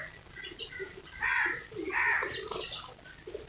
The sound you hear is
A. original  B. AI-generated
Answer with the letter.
A